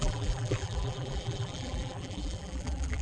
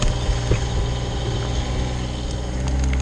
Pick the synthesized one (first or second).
first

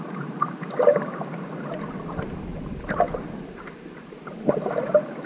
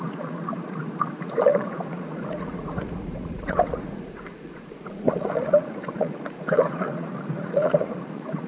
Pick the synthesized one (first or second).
second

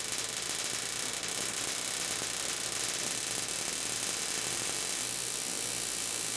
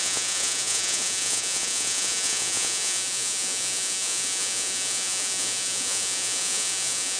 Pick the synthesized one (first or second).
second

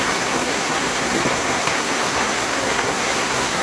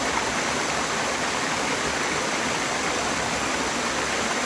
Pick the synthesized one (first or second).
first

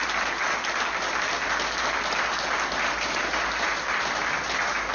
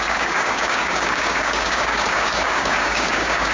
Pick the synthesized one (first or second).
second